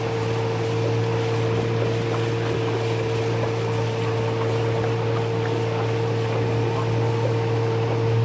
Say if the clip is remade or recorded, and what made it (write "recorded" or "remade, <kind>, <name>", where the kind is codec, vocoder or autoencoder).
recorded